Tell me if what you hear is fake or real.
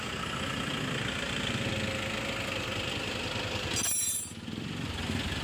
real